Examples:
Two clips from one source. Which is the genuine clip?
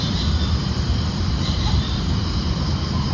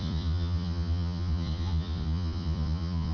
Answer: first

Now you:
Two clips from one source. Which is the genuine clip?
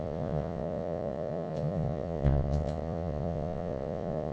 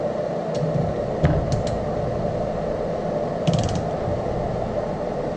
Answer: second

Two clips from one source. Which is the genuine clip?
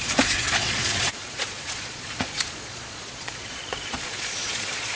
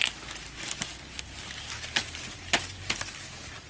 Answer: second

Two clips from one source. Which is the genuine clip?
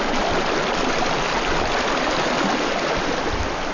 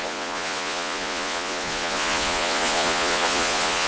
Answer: first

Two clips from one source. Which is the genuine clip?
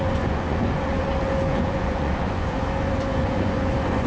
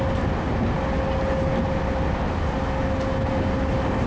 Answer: second